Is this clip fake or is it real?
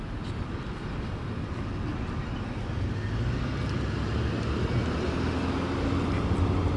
real